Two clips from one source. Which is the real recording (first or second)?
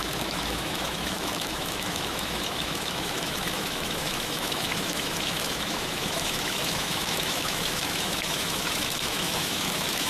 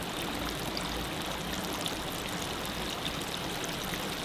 second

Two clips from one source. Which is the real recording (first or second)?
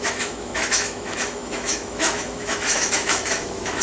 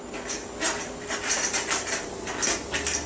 second